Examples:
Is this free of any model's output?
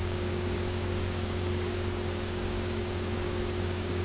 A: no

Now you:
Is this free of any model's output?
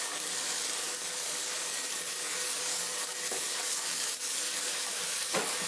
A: no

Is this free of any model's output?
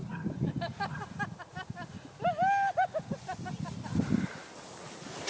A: yes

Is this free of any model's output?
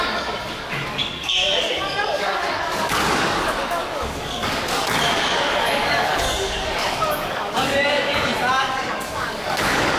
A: no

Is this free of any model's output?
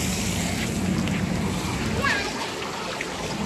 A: yes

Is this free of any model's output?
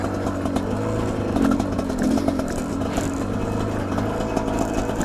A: yes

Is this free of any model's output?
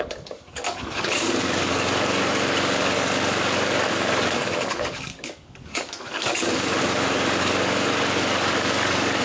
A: no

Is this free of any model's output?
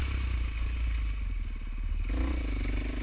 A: yes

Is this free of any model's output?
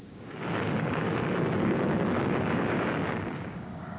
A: no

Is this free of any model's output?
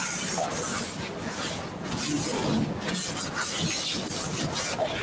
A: yes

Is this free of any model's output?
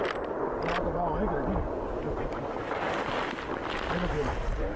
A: yes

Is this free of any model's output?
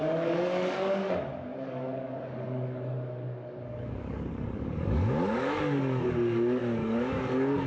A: no